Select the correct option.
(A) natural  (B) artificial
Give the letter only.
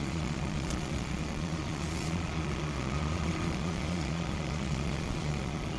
B